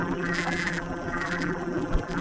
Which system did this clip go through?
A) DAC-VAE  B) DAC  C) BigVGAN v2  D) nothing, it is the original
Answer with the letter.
C